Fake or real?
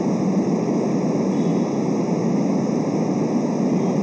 real